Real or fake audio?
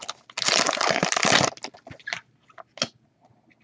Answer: real